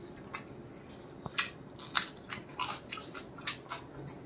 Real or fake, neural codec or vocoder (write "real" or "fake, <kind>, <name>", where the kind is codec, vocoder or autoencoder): real